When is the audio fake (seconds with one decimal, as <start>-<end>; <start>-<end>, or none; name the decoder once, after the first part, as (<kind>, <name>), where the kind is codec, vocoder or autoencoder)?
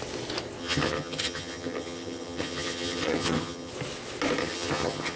0.6-3.7 (vocoder, HiFi-GAN); 4.4-5.2